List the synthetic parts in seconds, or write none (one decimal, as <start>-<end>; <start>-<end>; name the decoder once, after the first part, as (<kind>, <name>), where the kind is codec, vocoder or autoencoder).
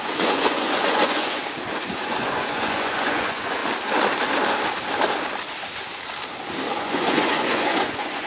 0.0-1.4 (vocoder, Vocos); 2.0-3.6; 6.8-8.3